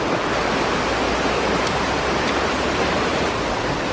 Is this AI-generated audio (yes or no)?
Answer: no